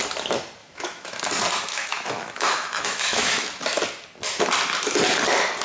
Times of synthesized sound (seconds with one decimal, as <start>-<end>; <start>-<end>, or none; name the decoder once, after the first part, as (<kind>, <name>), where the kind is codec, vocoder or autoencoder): 0.6-1.2 (autoencoder, DAC-VAE); 1.7-3.4